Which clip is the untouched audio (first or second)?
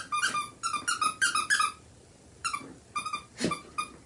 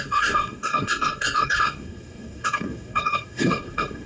first